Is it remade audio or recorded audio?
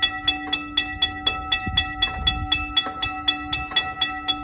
recorded